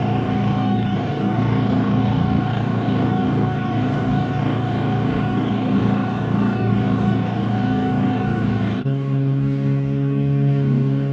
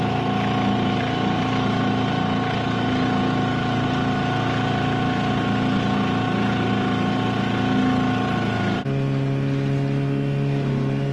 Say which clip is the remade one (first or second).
first